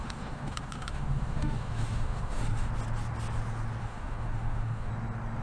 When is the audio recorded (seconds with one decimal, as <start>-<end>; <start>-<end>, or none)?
2.7-3.8; 4.9-5.4